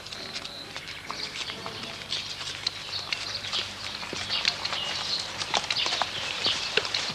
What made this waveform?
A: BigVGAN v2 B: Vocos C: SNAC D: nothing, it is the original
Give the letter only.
A